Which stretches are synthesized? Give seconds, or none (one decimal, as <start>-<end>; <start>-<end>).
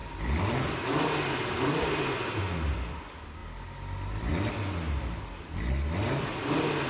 none